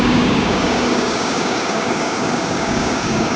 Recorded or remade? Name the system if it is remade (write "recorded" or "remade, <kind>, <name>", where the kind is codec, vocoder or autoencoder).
remade, codec, DAC